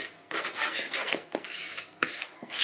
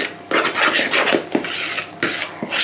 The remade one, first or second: first